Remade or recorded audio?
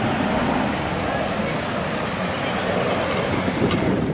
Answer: recorded